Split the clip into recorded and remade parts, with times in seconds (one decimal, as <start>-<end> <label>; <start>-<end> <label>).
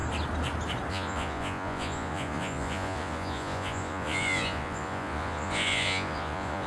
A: 0.0-0.9 recorded; 0.9-6.7 remade